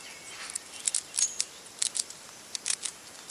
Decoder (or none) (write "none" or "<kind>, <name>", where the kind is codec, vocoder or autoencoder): vocoder, BigVGAN v2